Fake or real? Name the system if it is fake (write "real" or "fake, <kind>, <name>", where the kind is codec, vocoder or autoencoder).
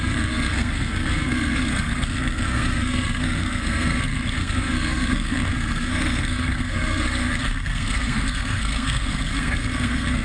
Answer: fake, codec, SNAC